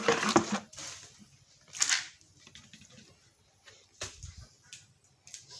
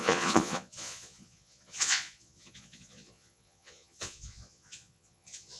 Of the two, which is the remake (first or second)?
second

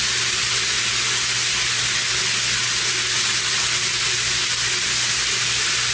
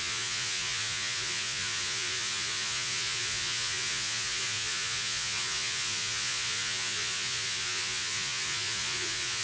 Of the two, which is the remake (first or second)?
second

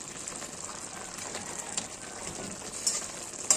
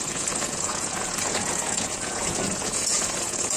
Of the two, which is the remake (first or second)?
second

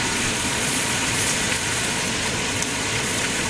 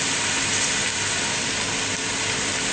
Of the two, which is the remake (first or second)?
first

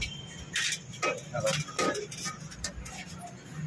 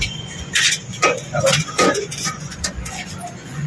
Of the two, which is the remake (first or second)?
second